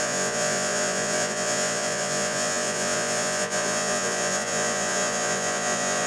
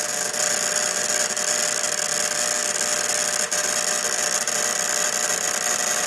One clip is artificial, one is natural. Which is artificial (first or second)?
first